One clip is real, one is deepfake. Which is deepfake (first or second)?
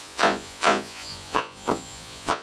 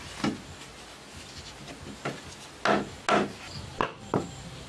first